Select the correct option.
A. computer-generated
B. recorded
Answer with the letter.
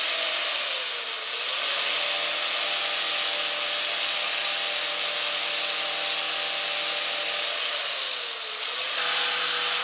B